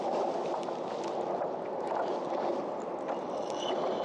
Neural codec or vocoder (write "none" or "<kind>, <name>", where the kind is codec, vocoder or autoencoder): none